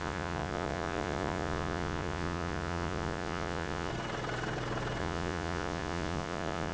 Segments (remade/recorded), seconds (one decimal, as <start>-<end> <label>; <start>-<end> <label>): 0.0-3.9 remade; 3.9-5.0 recorded; 5.0-6.7 remade